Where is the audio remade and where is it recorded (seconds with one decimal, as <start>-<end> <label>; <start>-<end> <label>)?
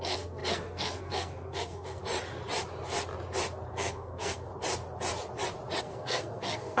0.0-2.0 remade; 2.0-3.7 recorded; 3.7-4.5 remade; 4.5-5.8 recorded; 5.8-6.8 remade